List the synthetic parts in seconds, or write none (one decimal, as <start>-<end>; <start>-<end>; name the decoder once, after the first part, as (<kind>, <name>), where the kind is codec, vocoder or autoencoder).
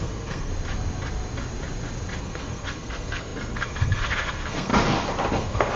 0.0-0.5 (codec, SNAC); 2.2-4.7; 5.3-5.8